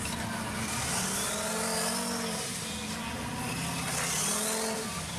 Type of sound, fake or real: real